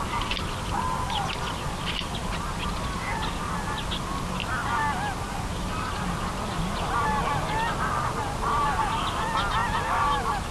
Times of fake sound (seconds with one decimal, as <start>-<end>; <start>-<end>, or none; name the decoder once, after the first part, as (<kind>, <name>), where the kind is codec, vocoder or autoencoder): none